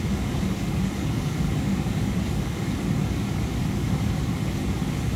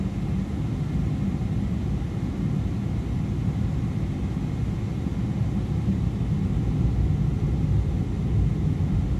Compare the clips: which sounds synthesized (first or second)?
first